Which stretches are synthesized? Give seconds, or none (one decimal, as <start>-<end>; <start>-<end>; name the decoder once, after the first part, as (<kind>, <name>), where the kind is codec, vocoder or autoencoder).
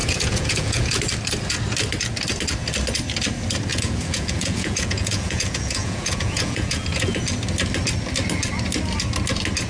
0.0-1.0 (vocoder, Vocos); 3.7-7.2